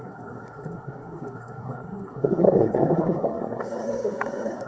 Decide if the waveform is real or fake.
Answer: fake